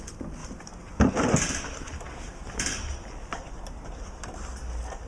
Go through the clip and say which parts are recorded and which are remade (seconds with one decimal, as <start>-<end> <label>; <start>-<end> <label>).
0.0-0.4 recorded; 0.4-3.5 remade; 3.5-5.1 recorded